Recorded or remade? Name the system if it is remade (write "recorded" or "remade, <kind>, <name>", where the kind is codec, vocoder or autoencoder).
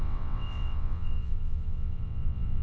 remade, vocoder, WaveNeXt